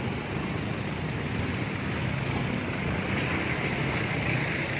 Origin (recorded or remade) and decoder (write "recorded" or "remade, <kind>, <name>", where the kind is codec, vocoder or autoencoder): remade, vocoder, BigVGAN v2